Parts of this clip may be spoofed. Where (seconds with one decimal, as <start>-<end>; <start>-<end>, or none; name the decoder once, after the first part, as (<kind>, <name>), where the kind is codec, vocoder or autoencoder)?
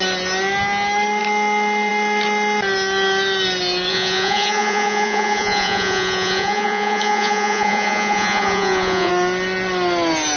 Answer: 3.9-9.1 (vocoder, Vocos)